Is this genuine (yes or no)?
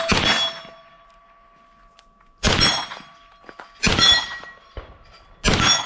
yes